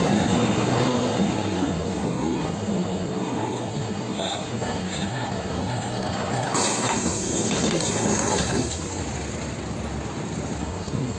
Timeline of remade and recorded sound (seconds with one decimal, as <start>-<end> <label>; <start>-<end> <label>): 0.0-9.0 remade; 9.0-10.6 recorded; 10.6-11.2 remade